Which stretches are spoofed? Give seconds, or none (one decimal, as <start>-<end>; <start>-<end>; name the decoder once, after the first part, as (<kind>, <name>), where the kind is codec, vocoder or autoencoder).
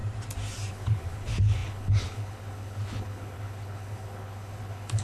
0.7-5.0 (codec, HILCodec)